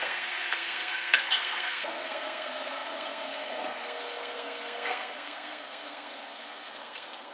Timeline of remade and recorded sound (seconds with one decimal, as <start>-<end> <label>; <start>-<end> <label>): 0.0-7.3 remade